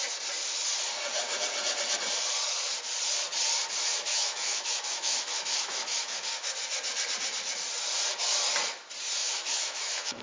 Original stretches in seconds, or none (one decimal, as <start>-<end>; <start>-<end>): 0.0-4.1; 6.5-9.2